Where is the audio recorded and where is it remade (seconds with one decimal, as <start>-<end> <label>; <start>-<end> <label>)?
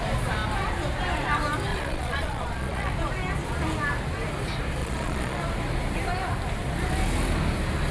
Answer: 0.0-1.7 recorded; 1.7-2.9 remade; 2.9-4.8 recorded; 4.8-5.4 remade; 5.4-7.9 recorded